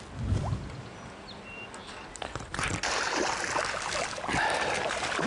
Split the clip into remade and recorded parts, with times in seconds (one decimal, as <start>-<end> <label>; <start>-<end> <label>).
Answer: 0.0-5.3 recorded